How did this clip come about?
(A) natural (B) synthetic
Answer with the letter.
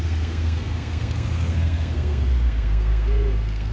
B